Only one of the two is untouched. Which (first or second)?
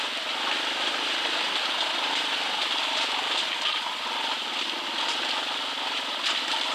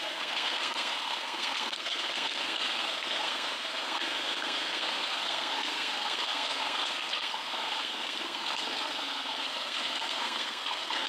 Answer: first